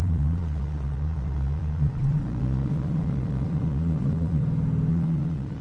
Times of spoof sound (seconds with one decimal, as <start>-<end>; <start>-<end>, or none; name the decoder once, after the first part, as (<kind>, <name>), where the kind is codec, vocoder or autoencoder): 0.0-4.4 (vocoder, Vocos); 4.9-5.6